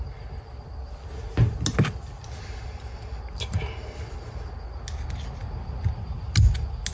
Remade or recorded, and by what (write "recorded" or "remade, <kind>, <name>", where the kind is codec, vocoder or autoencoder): recorded